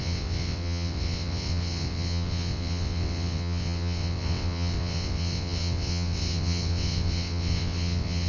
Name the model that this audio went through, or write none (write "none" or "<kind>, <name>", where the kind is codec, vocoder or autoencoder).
vocoder, WaveNeXt